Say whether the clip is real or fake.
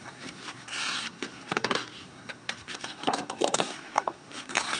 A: fake